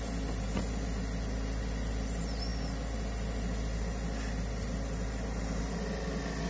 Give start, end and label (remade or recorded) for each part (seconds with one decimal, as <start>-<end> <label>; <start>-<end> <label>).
0.0-6.5 recorded